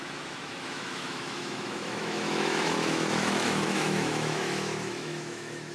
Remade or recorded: remade